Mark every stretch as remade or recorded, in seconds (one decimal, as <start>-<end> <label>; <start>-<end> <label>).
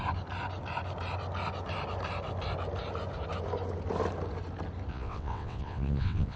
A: 0.0-4.9 recorded; 4.9-6.4 remade